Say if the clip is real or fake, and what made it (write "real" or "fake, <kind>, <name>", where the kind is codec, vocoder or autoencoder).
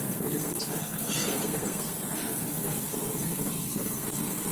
fake, codec, SNAC